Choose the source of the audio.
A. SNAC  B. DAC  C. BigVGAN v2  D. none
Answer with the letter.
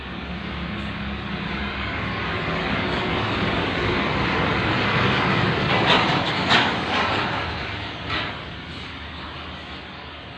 B